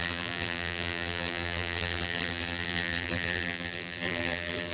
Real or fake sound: fake